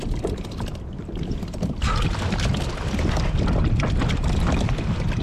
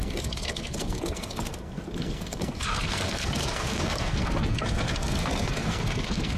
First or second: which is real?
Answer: first